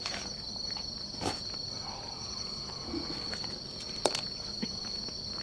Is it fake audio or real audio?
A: real